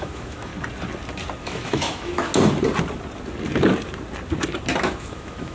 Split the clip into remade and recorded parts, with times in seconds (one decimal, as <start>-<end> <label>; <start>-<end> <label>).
0.0-0.5 remade; 0.5-1.4 recorded; 1.4-2.3 remade; 2.3-4.8 recorded; 4.8-5.5 remade